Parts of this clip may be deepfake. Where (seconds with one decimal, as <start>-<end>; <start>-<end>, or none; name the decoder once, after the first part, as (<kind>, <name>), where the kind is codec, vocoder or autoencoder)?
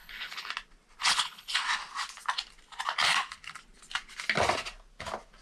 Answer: 0.0-0.5 (codec, HILCodec); 1.0-1.6